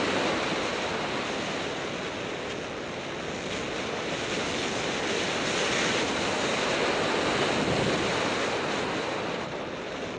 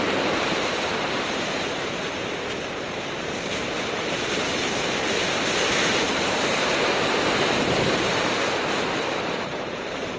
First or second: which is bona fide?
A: first